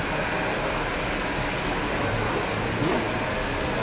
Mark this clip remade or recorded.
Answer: recorded